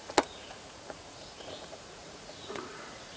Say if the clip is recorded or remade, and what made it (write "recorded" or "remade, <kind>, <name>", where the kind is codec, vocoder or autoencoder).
remade, vocoder, Vocos